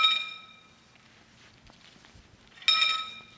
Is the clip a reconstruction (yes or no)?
no